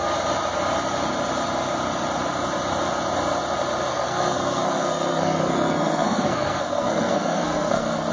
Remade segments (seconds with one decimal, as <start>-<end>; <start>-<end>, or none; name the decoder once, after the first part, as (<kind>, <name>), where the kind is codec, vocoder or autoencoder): 3.9-8.1 (codec, SNAC)